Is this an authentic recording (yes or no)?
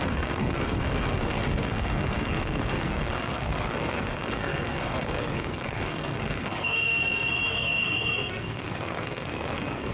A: no